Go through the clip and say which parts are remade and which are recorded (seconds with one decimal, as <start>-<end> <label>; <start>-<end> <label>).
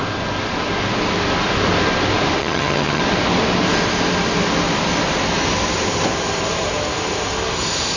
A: 0.0-2.4 recorded; 2.4-3.0 remade; 3.0-8.0 recorded